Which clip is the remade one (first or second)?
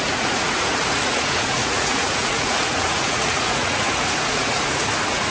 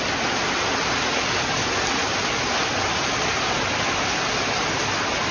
first